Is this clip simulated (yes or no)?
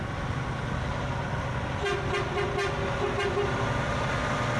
no